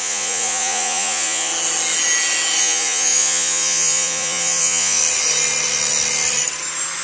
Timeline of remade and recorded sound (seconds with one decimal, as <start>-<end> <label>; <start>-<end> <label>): 0.0-1.5 remade; 1.5-2.6 recorded; 2.6-5.0 remade; 5.0-7.0 recorded